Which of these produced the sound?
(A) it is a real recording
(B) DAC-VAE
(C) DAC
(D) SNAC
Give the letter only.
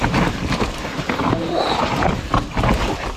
A